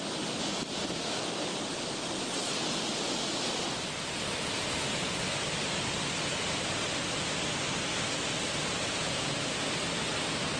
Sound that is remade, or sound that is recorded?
recorded